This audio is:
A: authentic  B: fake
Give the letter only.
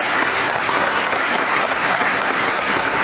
B